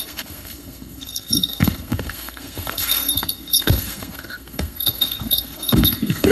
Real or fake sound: fake